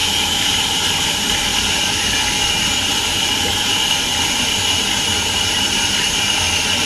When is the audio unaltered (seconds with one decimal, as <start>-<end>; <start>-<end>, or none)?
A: 1.5-2.6; 3.5-4.2